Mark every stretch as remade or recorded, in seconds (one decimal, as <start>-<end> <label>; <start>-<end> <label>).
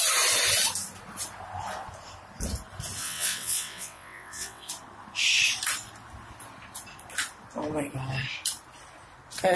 0.0-3.0 recorded; 3.0-4.7 remade; 4.7-9.6 recorded